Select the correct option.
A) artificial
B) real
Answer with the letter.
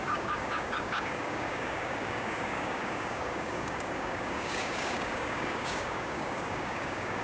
A